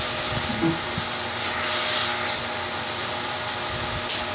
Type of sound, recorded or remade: recorded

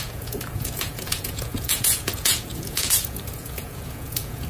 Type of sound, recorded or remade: remade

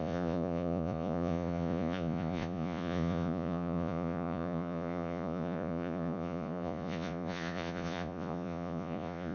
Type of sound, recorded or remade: remade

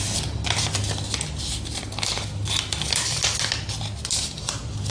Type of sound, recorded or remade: recorded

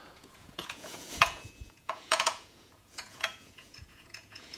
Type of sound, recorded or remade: remade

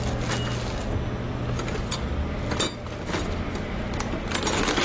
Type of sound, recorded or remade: recorded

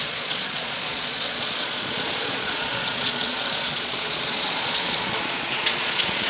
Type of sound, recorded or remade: remade